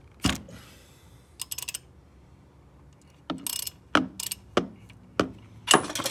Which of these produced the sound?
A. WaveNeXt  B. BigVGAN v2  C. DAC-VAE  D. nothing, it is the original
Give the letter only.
D